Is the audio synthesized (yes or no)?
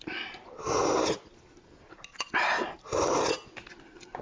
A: no